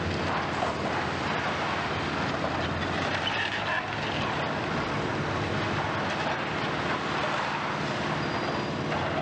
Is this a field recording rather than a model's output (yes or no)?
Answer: yes